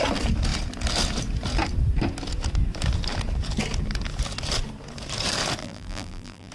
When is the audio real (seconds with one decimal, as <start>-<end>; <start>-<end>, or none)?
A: 0.0-5.6